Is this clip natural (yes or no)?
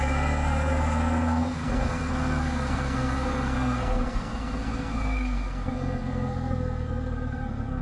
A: no